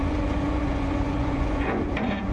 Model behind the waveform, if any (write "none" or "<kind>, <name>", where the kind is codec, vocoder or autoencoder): vocoder, Vocos